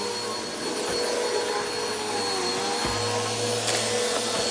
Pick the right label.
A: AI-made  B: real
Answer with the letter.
B